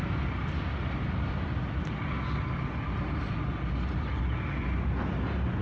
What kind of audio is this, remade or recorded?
recorded